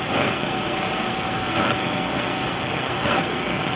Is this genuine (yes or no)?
no